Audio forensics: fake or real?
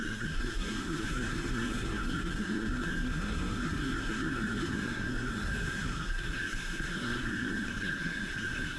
fake